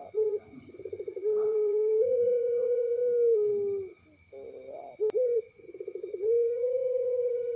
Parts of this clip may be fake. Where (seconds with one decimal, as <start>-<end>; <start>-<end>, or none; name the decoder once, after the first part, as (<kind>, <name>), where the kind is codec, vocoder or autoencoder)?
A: 0.0-3.0 (vocoder, Vocos); 5.5-7.6